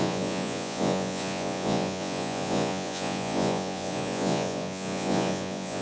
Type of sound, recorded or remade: remade